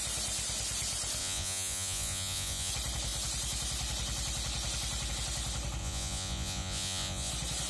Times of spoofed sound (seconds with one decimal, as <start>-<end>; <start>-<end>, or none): 1.2-2.7; 5.8-7.3

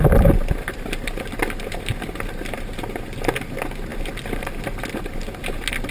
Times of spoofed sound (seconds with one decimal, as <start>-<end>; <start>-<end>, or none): none

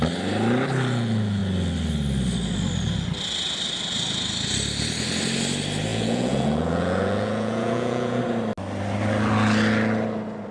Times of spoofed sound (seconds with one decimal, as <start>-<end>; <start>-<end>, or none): 5.9-8.2